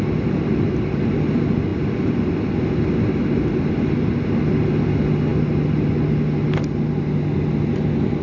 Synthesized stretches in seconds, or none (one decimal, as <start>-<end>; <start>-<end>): none